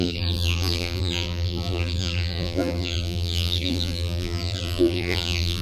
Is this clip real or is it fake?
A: fake